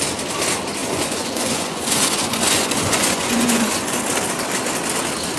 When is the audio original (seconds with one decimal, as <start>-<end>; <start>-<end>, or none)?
0.0-0.8; 4.0-5.4

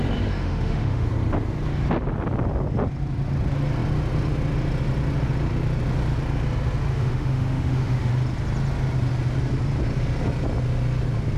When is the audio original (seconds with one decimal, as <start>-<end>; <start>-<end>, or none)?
0.0-0.4; 1.1-6.9; 8.1-11.4

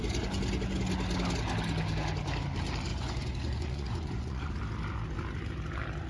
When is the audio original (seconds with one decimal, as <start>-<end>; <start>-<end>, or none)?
0.0-2.9; 4.5-6.1

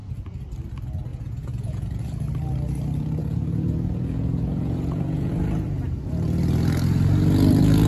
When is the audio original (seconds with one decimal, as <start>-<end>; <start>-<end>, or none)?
0.0-1.1; 2.0-3.2; 5.3-7.9

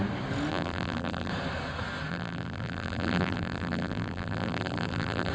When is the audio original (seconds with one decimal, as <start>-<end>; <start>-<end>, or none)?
0.0-0.5; 1.3-2.1

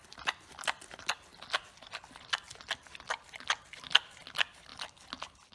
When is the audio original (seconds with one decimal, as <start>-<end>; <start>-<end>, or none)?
0.0-5.5